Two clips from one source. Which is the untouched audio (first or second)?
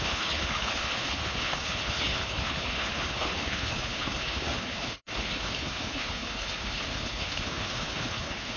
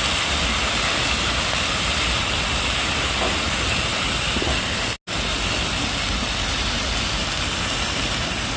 second